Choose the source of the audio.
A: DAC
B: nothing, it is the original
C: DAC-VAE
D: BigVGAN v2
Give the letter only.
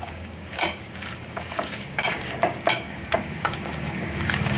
A